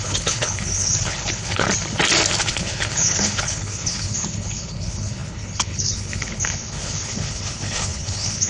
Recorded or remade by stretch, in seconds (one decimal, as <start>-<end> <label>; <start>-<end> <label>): 0.0-1.7 remade; 1.7-2.4 recorded; 2.4-8.5 remade